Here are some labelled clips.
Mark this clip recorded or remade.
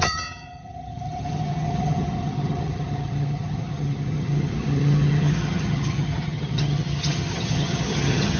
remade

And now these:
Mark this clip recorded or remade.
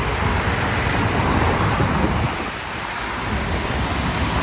recorded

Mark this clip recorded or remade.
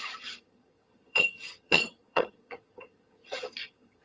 remade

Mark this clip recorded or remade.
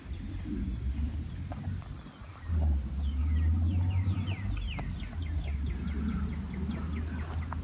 recorded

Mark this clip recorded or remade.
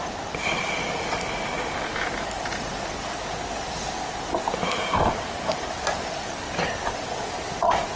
recorded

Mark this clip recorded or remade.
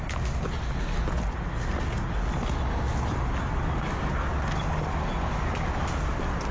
recorded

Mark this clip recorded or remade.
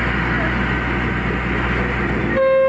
recorded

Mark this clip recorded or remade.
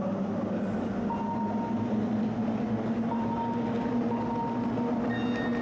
recorded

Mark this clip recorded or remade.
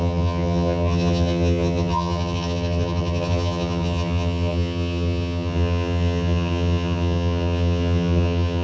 remade